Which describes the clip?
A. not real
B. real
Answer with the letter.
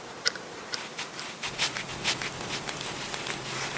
B